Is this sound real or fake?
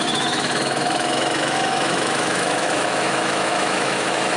fake